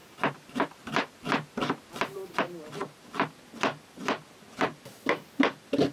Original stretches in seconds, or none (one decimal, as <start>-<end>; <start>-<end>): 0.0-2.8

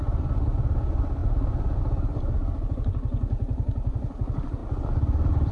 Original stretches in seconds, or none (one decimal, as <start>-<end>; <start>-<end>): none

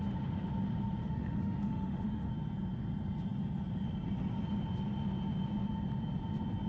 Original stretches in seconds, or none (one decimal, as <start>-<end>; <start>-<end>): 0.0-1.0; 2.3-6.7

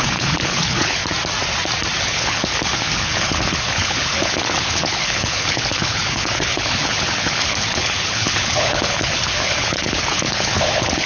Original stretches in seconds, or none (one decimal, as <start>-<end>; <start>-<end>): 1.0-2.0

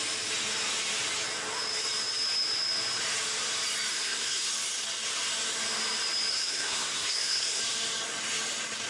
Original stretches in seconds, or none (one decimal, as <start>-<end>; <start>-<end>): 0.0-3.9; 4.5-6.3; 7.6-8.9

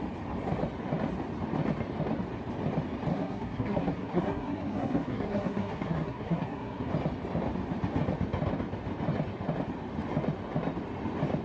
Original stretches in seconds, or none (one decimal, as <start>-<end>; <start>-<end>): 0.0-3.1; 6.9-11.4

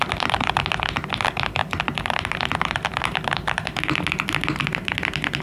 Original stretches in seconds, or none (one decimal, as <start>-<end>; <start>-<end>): 0.0-1.6; 4.3-4.7